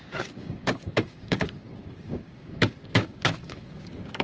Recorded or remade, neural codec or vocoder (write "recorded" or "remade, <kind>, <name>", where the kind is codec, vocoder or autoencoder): remade, codec, DAC